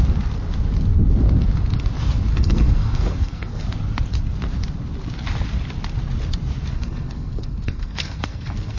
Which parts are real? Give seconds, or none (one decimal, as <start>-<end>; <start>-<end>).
0.0-2.3; 3.6-6.7